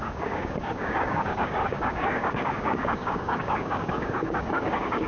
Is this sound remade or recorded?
remade